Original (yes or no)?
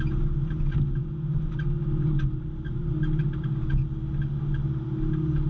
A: yes